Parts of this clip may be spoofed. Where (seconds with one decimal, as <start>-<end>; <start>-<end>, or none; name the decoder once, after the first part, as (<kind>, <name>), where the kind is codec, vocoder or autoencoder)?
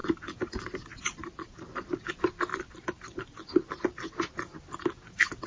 none